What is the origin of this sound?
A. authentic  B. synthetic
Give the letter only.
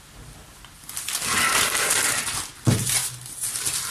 A